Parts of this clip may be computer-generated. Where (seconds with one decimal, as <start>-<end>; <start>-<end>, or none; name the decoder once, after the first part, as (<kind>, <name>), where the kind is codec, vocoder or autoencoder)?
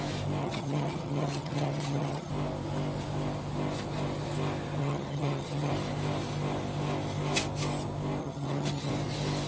0.4-2.3 (vocoder, HiFi-GAN); 4.8-5.7; 8.2-8.9